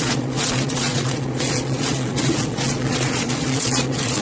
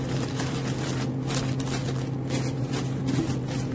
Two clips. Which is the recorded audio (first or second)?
second